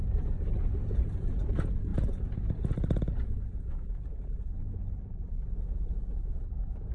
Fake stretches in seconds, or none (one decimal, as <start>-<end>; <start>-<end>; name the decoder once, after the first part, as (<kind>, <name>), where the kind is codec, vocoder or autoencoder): 0.0-1.0 (vocoder, BigVGAN v2); 1.9-6.0